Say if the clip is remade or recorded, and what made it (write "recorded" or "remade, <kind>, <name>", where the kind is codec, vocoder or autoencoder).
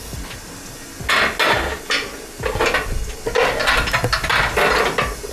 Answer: recorded